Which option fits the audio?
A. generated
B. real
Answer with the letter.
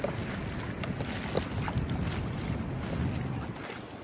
B